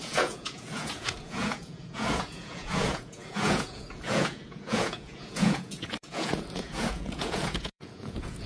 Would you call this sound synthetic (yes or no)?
yes